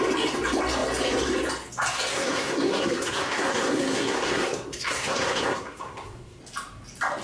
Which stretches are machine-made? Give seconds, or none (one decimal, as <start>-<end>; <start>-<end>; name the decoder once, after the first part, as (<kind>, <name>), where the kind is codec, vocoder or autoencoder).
2.1-6.4 (codec, SNAC)